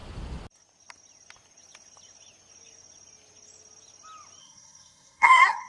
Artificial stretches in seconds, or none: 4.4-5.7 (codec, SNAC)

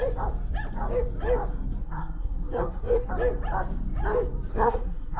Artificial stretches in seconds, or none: 1.8-3.1 (codec, SNAC); 4.5-5.2

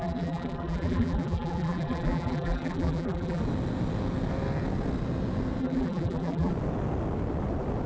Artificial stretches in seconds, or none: 0.0-3.4 (vocoder, BigVGAN v2); 5.6-6.5

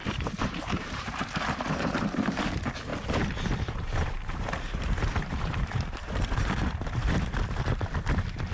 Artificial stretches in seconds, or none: 0.0-2.4 (vocoder, BigVGAN v2); 2.9-7.6

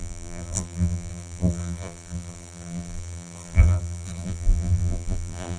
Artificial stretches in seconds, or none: 0.0-5.6 (vocoder, BigVGAN v2)

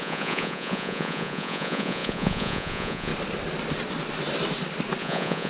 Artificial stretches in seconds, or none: 0.0-3.1 (vocoder, Vocos); 5.0-5.5